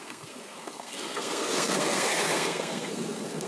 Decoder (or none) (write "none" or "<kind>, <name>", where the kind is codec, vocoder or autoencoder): codec, SNAC